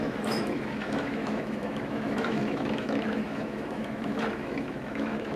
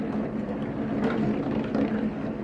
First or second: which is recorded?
second